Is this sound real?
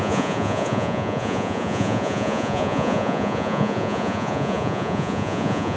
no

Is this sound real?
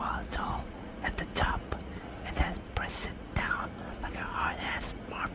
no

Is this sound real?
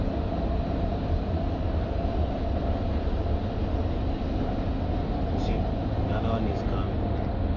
yes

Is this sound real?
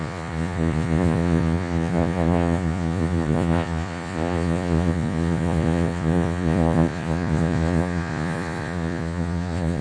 no